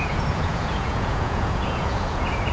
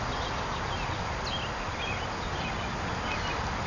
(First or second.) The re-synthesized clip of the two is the first